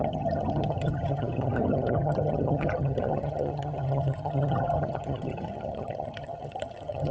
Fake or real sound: fake